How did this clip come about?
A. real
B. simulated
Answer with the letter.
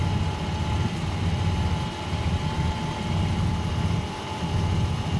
A